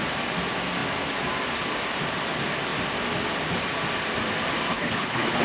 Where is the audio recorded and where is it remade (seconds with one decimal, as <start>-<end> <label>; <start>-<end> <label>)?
0.0-4.7 recorded; 4.7-5.4 remade